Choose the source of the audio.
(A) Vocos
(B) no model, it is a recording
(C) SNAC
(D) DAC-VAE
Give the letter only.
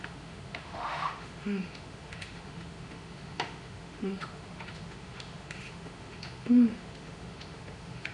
D